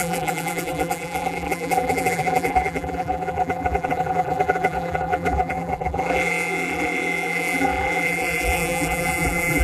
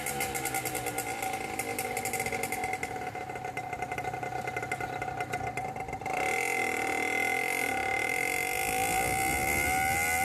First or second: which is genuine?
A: second